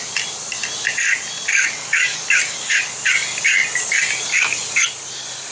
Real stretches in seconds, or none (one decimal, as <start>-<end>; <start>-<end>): 0.0-1.5; 2.8-5.5